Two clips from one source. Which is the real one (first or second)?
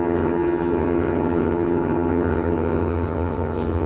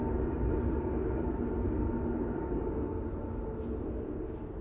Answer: second